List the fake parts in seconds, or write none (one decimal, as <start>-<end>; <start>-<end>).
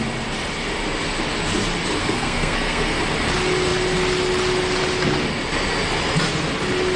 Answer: 2.0-3.0